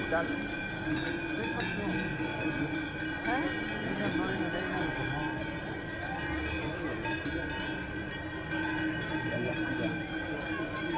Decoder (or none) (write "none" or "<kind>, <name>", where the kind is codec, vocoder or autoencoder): none